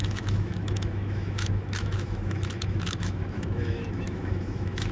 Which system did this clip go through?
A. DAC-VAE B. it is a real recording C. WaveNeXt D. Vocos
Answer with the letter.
A